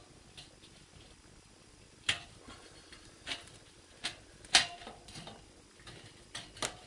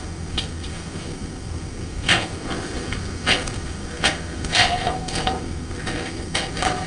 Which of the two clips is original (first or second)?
first